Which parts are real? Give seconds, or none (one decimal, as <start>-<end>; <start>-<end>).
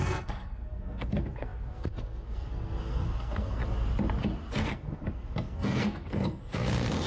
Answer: 3.6-4.6